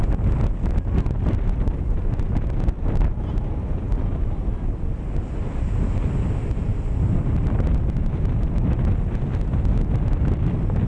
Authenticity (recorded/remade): recorded